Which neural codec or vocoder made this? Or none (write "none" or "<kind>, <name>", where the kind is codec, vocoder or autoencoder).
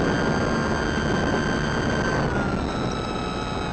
none